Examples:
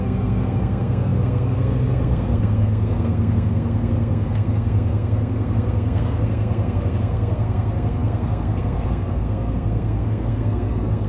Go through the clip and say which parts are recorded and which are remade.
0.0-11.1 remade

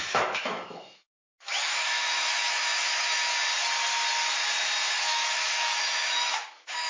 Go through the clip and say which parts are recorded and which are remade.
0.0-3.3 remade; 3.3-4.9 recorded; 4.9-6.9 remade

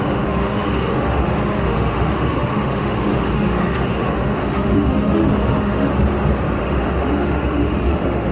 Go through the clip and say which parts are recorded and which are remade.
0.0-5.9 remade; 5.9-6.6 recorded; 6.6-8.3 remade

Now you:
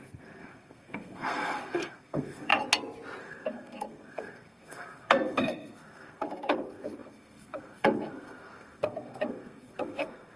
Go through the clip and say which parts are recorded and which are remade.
0.0-2.5 remade; 2.5-3.2 recorded; 3.2-10.4 remade

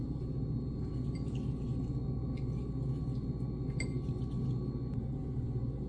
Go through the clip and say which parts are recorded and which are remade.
0.0-0.9 remade; 0.9-5.9 recorded

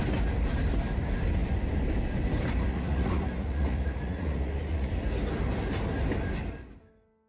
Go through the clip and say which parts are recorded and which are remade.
0.0-2.7 recorded; 2.7-4.9 remade; 4.9-7.3 recorded